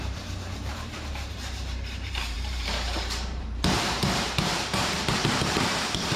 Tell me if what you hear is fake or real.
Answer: fake